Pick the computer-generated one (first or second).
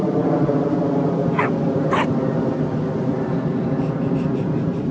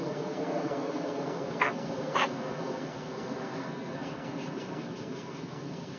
second